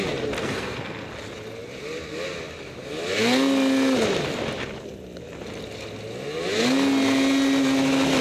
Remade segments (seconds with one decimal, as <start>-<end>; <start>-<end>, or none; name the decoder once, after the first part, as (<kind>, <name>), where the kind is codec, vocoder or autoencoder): 0.4-1.1 (codec, SNAC)